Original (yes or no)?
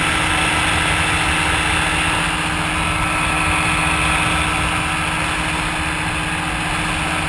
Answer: yes